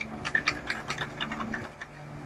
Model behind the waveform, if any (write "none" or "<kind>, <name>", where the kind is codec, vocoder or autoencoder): none